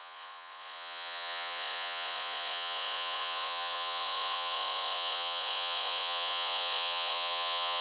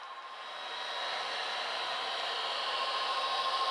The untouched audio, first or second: second